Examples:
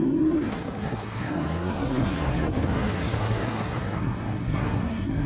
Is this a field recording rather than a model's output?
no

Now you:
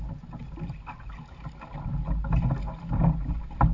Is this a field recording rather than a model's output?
yes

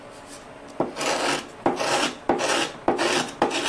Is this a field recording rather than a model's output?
yes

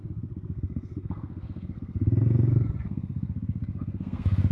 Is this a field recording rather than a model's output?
no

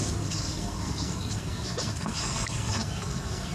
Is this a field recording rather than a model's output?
no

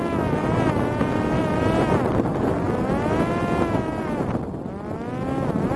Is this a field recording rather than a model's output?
yes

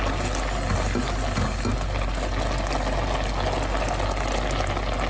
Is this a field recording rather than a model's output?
yes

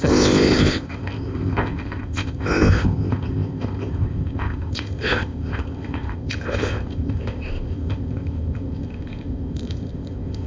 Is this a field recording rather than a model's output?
no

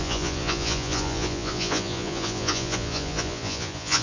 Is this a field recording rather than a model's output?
no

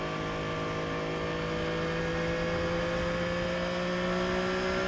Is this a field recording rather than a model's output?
yes